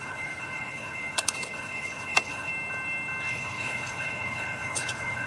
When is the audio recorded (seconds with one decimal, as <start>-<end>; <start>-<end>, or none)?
2.5-3.3